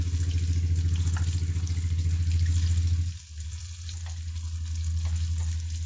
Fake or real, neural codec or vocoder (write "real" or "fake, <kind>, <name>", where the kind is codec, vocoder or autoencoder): real